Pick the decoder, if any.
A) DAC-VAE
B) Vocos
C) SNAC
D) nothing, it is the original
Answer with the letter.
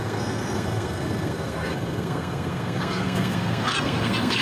C